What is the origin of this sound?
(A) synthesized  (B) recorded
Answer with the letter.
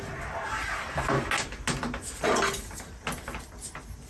B